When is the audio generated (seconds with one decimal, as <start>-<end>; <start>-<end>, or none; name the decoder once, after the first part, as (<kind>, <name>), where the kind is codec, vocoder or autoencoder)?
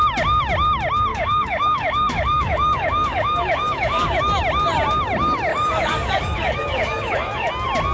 1.1-4.2 (codec, DAC); 5.5-7.5